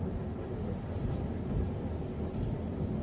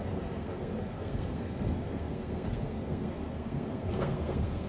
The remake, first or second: second